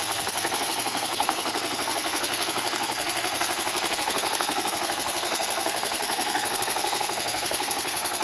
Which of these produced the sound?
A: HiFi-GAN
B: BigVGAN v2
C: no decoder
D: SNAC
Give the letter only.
D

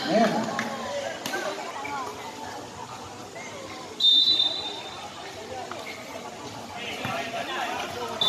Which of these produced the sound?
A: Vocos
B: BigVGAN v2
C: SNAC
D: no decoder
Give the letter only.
D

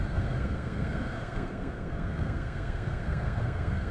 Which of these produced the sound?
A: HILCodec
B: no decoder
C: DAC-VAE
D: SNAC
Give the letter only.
D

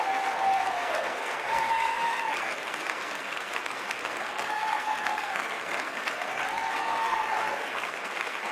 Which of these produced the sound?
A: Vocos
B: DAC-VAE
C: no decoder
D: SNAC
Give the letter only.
D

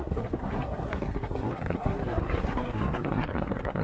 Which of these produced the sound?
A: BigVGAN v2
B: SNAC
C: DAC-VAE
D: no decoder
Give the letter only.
B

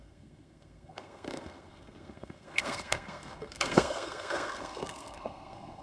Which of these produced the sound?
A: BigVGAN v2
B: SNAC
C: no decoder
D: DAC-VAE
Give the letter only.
B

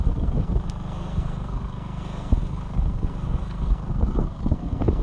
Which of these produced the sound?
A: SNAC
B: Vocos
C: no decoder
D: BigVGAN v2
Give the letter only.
A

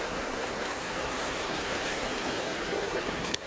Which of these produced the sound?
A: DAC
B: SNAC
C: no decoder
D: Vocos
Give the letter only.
B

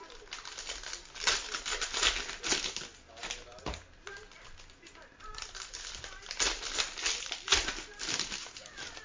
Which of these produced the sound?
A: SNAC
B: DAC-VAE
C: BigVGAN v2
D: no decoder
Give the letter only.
D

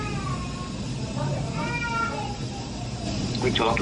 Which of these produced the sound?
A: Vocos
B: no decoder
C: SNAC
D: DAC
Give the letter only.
B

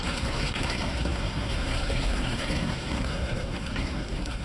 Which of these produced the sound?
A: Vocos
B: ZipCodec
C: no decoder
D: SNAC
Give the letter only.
D